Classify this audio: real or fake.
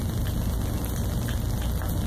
real